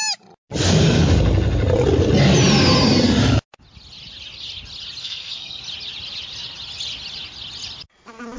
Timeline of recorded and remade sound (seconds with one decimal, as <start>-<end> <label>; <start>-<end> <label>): 0.0-5.0 recorded; 5.0-5.6 remade; 5.6-8.4 recorded